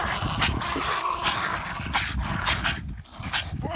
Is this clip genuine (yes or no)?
yes